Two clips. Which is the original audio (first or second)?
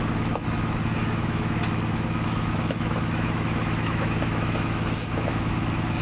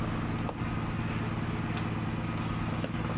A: second